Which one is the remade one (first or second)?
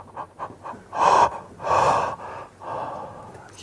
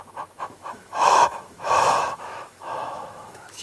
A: second